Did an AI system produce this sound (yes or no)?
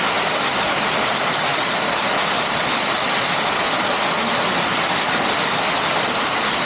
no